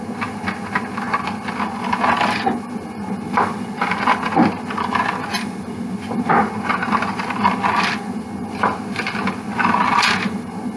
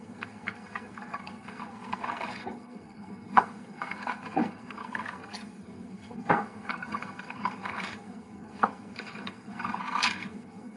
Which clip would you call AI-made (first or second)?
second